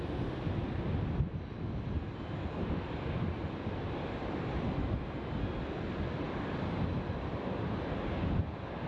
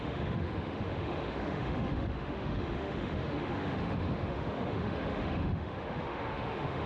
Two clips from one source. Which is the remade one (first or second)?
second